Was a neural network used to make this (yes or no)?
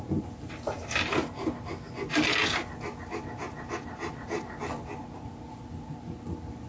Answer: no